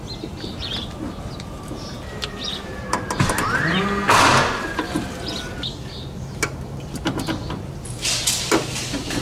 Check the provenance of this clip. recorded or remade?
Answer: recorded